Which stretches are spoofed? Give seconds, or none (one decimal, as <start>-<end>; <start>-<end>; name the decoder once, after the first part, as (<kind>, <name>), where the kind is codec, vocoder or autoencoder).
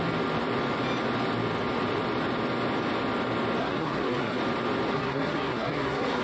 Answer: 3.6-4.4 (codec, SNAC); 4.9-6.2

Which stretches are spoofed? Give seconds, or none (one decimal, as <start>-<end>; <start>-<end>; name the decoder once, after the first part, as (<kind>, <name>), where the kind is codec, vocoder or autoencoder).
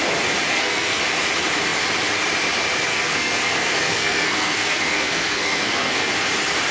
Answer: 0.5-1.0 (codec, SNAC); 2.9-6.1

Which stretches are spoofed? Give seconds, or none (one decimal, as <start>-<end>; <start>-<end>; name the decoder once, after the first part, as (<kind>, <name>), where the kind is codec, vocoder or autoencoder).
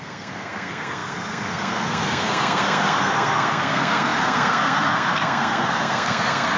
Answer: 0.0-6.6 (codec, SNAC)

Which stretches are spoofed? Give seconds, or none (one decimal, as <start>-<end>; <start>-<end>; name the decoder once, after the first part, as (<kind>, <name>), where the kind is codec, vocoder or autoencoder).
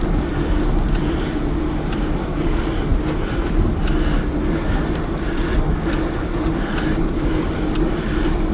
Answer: none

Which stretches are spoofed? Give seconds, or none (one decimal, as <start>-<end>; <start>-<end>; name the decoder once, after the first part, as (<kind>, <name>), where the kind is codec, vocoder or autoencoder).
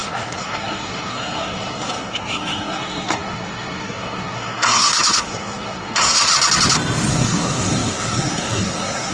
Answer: 0.0-6.3 (codec, SNAC); 7.1-9.1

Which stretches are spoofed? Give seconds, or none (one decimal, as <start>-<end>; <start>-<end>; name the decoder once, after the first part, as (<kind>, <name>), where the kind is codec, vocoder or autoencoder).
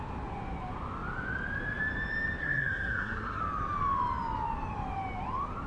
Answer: 2.4-3.4 (codec, SNAC)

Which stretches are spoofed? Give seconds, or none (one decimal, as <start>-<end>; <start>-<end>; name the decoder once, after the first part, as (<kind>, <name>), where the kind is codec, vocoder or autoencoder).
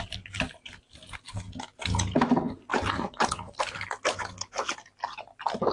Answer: none